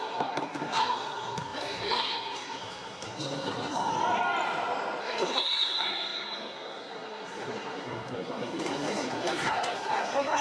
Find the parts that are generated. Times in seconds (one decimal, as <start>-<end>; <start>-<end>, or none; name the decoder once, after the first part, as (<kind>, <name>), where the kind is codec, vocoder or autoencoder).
0.0-3.9 (codec, SNAC); 5.0-10.4